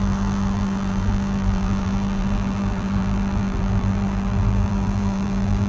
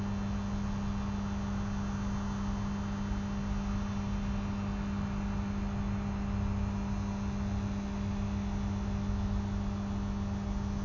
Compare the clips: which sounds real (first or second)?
second